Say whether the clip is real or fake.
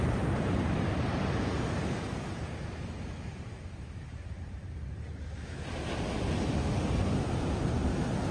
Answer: fake